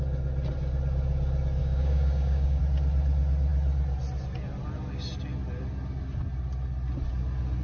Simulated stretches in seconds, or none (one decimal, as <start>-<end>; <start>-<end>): 1.6-2.6